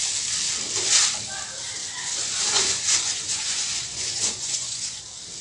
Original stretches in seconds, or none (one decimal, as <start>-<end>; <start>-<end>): 0.0-1.8; 5.0-5.4